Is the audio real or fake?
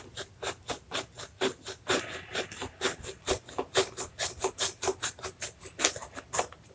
real